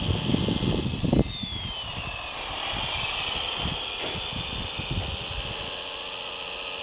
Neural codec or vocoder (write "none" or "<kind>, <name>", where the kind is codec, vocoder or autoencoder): none